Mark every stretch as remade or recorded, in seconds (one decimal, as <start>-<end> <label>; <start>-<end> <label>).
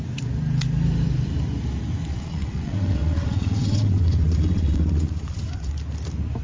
0.0-2.1 recorded; 2.1-5.7 remade; 5.7-6.4 recorded